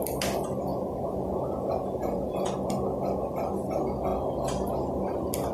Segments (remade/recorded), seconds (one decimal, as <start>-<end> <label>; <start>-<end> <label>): 0.0-0.7 recorded; 0.7-2.5 remade; 2.5-5.5 recorded